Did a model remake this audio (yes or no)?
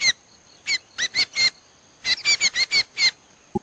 no